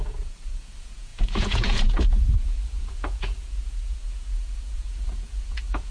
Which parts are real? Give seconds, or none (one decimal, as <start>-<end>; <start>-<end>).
none